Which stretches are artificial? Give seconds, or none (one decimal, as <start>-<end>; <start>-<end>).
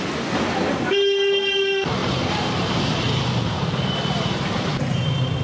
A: 2.0-4.7